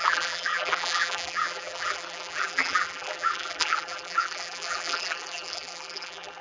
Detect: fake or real fake